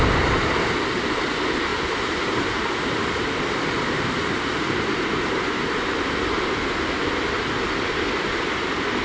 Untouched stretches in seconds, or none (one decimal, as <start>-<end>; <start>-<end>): 0.0-1.7; 7.0-9.0